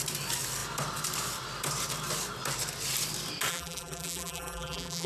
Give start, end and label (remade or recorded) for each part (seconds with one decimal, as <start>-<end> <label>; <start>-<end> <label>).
0.0-3.5 recorded; 3.5-5.1 remade